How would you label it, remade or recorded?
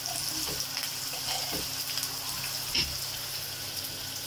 recorded